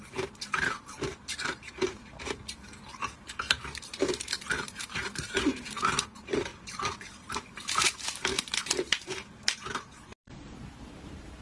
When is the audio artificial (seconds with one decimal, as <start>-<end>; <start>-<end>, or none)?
0.0-6.5; 7.4-11.4